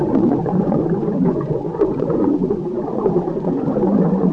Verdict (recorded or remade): remade